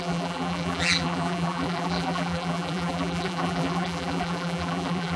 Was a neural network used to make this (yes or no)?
yes